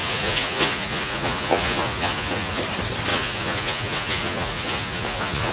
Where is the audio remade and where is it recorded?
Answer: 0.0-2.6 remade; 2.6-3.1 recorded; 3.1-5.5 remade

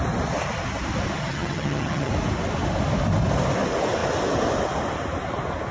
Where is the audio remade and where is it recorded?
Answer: 0.0-1.2 recorded; 1.2-2.1 remade; 2.1-5.7 recorded

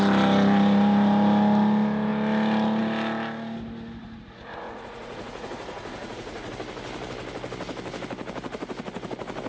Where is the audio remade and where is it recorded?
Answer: 0.0-4.0 recorded; 4.0-6.5 remade; 6.5-9.5 recorded

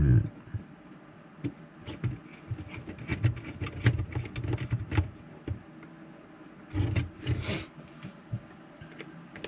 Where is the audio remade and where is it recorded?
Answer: 0.0-9.5 recorded